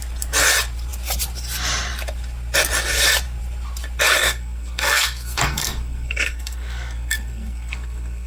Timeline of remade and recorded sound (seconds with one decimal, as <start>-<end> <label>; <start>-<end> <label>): 0.0-4.2 recorded; 4.2-8.3 remade